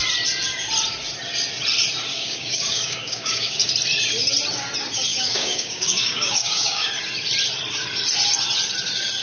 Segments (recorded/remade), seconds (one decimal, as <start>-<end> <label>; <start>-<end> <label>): 0.0-2.1 recorded; 2.1-3.7 remade; 3.7-5.1 recorded; 5.1-6.9 remade; 6.9-9.2 recorded